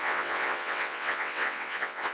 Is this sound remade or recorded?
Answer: remade